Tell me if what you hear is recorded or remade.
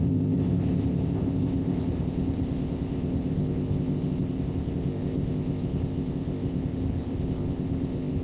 remade